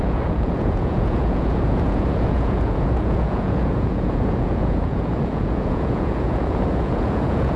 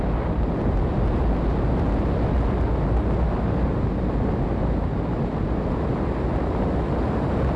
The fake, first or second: first